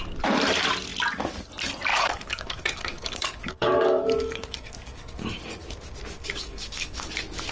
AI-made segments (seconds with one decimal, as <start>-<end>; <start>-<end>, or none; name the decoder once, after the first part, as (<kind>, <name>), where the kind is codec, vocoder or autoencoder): 1.9-5.7 (codec, DAC); 6.2-7.1